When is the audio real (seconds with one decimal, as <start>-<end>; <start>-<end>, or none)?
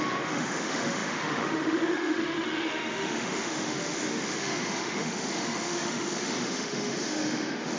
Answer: none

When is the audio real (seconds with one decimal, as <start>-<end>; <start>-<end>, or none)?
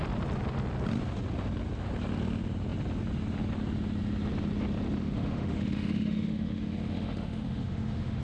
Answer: 0.0-5.0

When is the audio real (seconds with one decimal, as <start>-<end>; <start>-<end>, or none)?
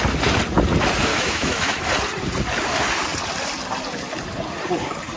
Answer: 0.0-1.1; 1.8-5.2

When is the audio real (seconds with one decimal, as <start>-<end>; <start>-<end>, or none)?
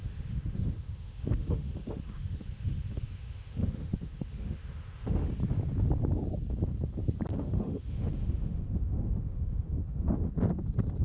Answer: 5.3-7.3; 10.3-11.0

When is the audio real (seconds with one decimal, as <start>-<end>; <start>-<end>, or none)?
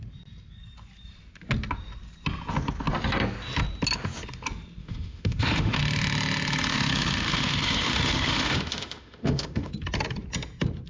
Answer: 0.0-4.8; 5.8-6.7; 9.7-10.9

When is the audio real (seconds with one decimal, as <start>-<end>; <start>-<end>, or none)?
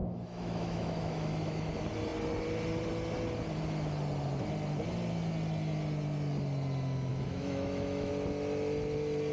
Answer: 1.7-7.1; 8.1-9.3